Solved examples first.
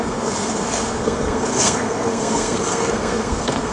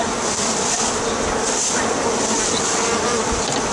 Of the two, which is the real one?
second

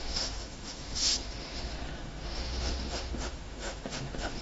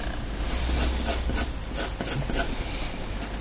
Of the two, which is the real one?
second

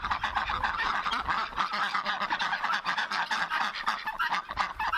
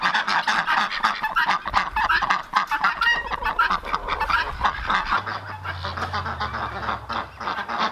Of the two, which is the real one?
second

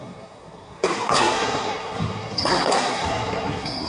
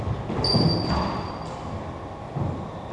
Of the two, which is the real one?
second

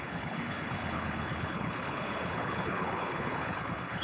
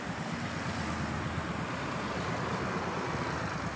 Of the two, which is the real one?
second